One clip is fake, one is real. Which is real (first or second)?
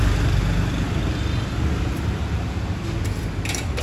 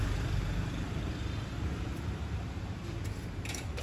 first